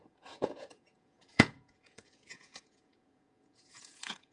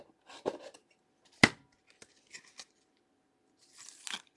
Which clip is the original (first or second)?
second